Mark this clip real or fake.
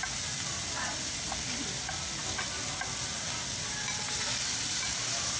real